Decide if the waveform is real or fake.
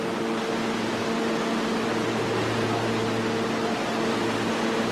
real